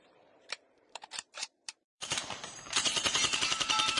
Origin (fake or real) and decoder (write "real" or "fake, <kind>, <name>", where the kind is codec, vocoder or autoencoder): fake, vocoder, BigVGAN v2